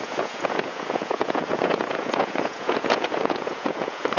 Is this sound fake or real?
fake